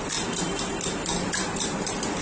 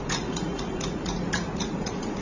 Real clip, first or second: first